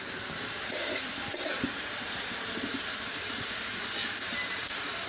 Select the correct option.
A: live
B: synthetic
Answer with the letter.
B